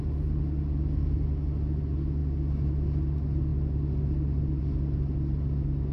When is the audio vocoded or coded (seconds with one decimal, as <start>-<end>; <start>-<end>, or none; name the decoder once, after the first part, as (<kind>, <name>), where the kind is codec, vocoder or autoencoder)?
none